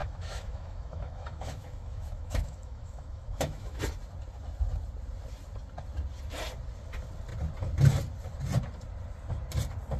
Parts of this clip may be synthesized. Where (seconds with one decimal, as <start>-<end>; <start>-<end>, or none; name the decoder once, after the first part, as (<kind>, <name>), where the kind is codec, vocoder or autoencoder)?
0.0-3.8 (autoencoder, DAC-VAE)